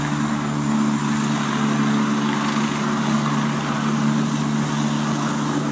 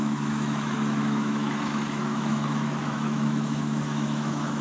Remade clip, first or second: second